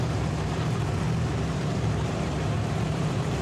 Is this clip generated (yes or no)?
yes